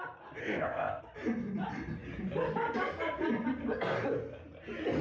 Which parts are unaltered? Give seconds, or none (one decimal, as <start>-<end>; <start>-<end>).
0.0-0.4; 1.0-5.0